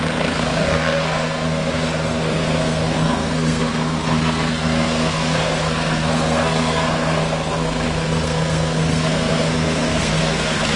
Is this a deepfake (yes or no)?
yes